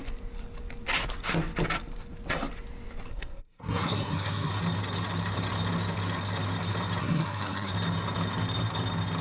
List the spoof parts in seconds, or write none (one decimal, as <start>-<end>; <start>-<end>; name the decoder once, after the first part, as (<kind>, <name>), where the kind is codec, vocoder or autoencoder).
3.1-4.5 (codec, SNAC); 7.0-7.7

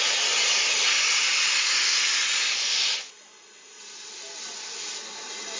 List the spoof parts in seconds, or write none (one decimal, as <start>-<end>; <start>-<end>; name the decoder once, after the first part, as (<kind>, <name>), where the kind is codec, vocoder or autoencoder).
none